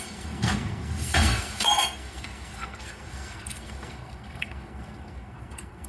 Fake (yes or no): yes